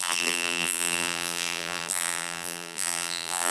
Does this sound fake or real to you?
fake